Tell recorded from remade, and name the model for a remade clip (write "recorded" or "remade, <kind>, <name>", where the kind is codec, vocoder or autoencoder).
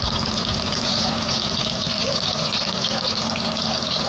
recorded